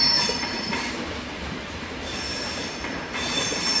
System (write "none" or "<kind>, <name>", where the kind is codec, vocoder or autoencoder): vocoder, BigVGAN v2